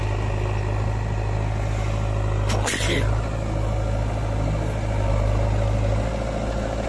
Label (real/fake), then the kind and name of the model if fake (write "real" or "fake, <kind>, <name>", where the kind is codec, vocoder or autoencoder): real